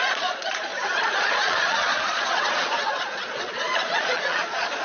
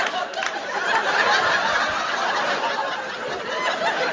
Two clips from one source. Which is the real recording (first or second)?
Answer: second